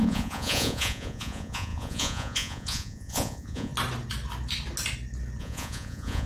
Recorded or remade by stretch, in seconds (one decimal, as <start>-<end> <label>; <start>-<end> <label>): 0.0-3.7 remade; 3.7-5.4 recorded; 5.4-6.3 remade